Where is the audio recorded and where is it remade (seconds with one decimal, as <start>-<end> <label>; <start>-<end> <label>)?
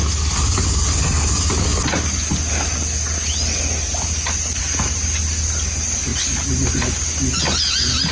0.0-8.1 recorded